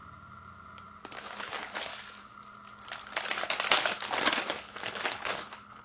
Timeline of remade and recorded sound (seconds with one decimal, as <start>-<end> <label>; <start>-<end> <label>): 0.0-1.4 recorded; 1.4-1.9 remade; 1.9-4.4 recorded; 4.4-5.8 remade